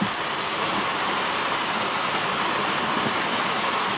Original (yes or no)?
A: yes